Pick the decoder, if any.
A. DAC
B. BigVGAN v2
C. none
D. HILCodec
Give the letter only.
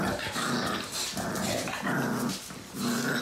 C